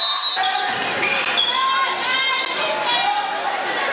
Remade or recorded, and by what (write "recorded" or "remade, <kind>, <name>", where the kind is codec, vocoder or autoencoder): recorded